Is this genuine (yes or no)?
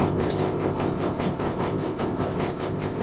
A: no